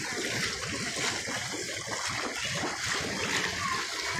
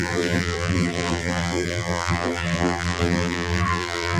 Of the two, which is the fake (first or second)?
second